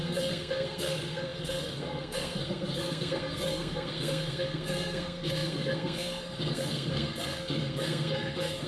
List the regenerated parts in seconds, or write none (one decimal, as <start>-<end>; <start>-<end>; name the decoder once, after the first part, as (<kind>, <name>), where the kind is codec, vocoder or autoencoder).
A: 0.0-8.7 (codec, SNAC)